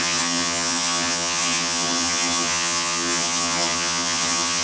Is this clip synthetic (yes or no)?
yes